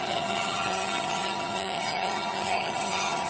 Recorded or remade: remade